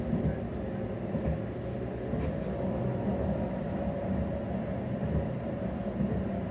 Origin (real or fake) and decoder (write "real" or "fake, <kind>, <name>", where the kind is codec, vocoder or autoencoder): real